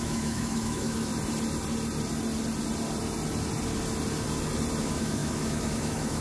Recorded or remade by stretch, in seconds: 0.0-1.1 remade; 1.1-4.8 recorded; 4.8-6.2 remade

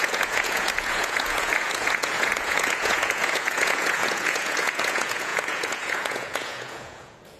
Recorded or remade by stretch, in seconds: 0.0-7.4 remade

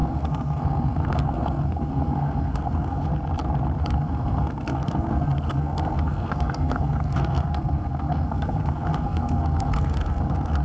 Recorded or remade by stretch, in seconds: 0.0-3.1 remade; 3.1-3.8 recorded; 3.8-10.6 remade

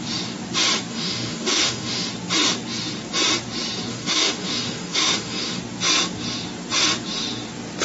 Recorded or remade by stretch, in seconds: 0.0-0.9 recorded; 0.9-2.1 remade; 2.1-3.9 recorded; 3.9-5.6 remade; 5.6-7.8 recorded

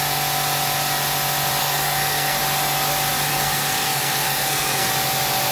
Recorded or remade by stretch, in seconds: 0.0-1.6 recorded; 1.6-2.4 remade; 2.4-3.3 recorded; 3.3-4.9 remade; 4.9-5.5 recorded

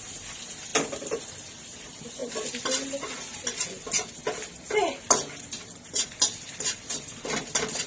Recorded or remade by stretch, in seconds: 0.0-2.2 remade; 2.2-5.3 recorded; 5.3-7.9 remade

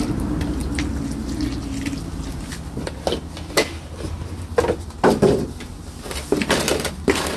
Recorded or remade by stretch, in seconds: 0.0-7.4 recorded